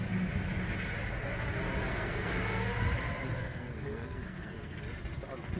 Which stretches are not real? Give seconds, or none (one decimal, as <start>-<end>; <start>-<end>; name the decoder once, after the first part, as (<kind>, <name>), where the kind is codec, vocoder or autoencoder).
1.9-2.7 (codec, SNAC); 3.4-4.8